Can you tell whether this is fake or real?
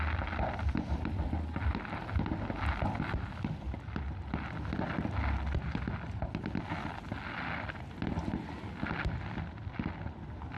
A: real